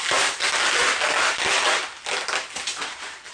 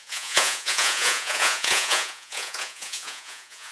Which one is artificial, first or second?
second